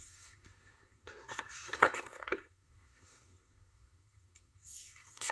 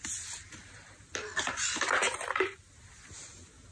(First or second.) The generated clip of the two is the first